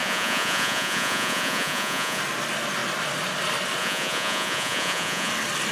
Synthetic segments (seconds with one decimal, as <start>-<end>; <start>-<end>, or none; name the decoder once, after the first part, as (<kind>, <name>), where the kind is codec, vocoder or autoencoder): 0.0-2.2 (vocoder, Vocos); 3.8-5.3